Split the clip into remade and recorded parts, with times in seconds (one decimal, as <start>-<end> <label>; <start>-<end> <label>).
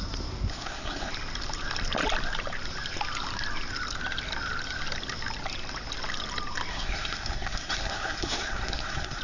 0.0-0.5 recorded; 0.5-1.1 remade; 1.1-6.7 recorded; 6.7-9.2 remade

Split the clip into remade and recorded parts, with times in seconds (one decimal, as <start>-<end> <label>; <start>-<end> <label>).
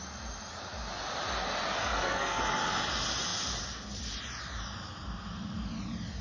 0.0-1.8 recorded; 1.8-2.4 remade; 2.4-6.2 recorded